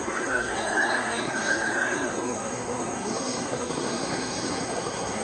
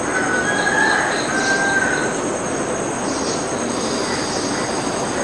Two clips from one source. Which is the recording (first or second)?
second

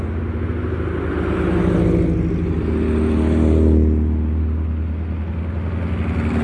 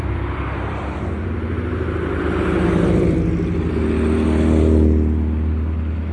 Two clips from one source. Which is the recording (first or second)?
first